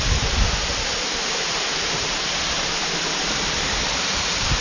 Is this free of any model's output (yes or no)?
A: no